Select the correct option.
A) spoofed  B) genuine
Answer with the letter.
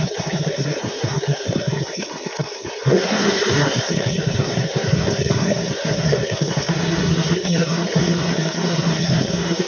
A